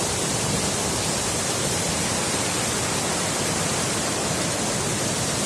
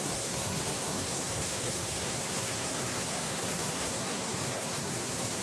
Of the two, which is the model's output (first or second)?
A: second